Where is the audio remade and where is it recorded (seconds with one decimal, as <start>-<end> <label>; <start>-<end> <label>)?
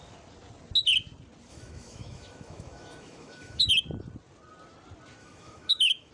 0.0-1.5 recorded; 1.5-3.7 remade; 3.7-5.2 recorded; 5.2-6.1 remade